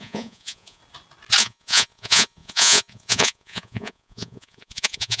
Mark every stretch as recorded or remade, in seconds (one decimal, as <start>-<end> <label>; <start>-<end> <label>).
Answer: 0.0-0.8 remade; 0.8-1.4 recorded; 1.4-5.2 remade